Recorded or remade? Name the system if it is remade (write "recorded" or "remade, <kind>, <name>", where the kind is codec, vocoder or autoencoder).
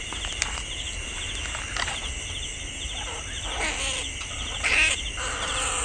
recorded